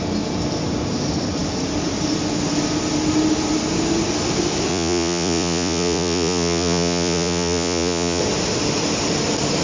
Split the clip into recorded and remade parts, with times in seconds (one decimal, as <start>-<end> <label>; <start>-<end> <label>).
0.0-4.7 recorded; 4.7-8.2 remade; 8.2-9.6 recorded